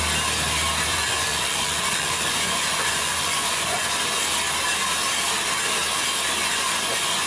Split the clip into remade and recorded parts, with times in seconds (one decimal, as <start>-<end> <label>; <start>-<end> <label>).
0.0-0.9 recorded; 0.9-3.9 remade; 3.9-6.4 recorded; 6.4-7.3 remade